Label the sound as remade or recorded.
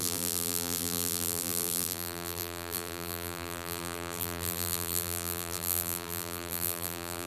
remade